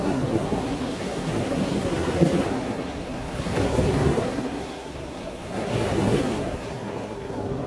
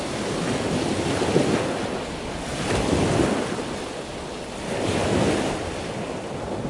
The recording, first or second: second